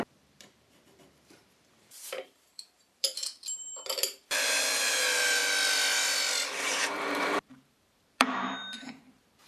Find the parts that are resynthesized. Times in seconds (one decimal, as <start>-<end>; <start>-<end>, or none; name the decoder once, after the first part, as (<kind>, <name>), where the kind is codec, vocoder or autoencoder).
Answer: 0.0-5.4 (vocoder, BigVGAN v2); 6.6-9.5